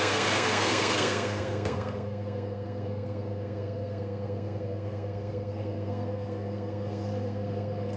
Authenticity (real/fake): fake